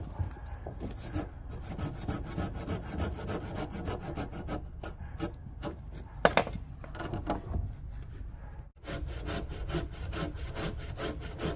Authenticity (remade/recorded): recorded